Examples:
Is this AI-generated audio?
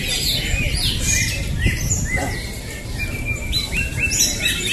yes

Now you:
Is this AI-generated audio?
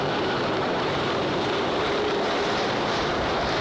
yes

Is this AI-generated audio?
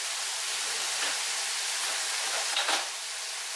no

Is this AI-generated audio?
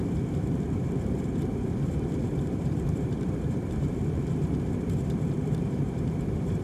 yes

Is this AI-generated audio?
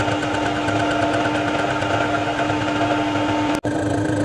no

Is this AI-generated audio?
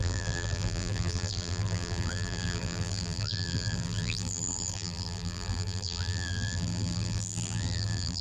yes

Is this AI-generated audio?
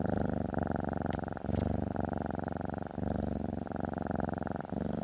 no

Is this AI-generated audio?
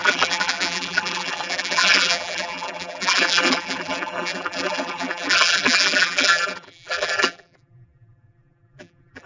yes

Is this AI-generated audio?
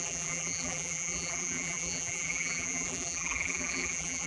yes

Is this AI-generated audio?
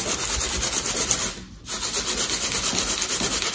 no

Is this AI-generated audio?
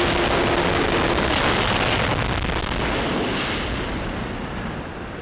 no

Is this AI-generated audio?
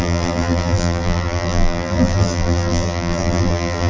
yes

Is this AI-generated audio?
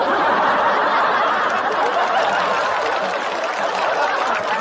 no